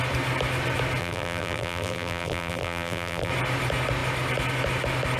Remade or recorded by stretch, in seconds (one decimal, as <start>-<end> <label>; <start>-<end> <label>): 0.0-1.0 recorded; 1.0-3.3 remade; 3.3-5.2 recorded